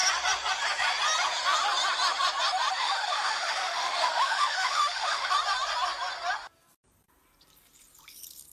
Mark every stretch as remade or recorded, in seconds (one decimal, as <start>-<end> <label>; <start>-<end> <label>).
0.0-2.8 recorded; 2.8-5.3 remade; 5.3-8.5 recorded